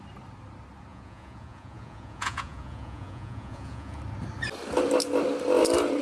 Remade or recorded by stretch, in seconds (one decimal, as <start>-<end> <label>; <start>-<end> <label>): 0.0-0.9 recorded; 0.9-4.0 remade; 4.0-6.0 recorded